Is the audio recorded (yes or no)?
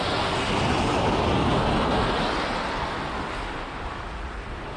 yes